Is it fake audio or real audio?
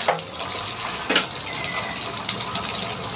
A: real